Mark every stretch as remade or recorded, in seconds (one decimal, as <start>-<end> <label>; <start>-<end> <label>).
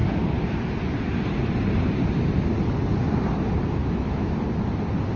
0.0-3.8 recorded; 3.8-4.3 remade; 4.3-5.2 recorded